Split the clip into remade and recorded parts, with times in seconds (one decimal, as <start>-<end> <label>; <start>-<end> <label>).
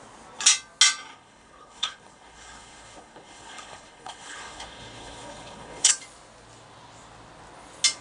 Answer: 0.0-1.1 recorded; 1.1-5.9 remade; 5.9-8.0 recorded